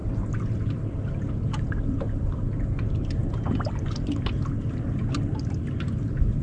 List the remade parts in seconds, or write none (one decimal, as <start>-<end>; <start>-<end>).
none